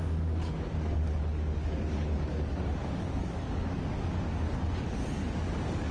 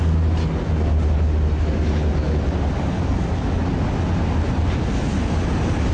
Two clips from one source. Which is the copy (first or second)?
first